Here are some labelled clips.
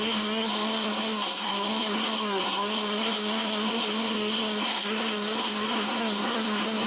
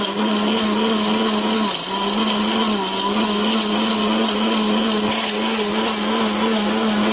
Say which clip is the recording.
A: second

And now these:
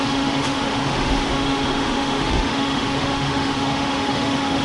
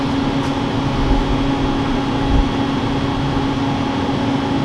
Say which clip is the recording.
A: second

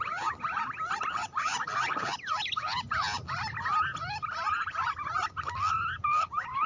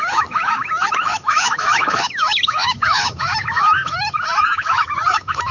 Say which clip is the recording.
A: first